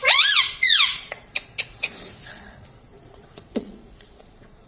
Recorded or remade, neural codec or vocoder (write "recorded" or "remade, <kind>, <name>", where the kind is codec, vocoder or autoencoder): remade, vocoder, Vocos